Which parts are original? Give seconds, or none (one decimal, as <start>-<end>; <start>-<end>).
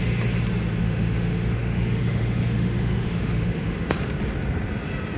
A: 0.0-0.8; 3.9-5.2